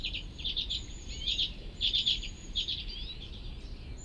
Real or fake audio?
fake